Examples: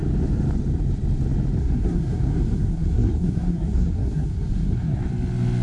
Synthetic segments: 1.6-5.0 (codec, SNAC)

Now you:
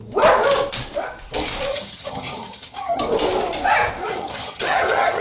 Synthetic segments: 1.7-3.0 (vocoder, HiFi-GAN); 4.0-5.2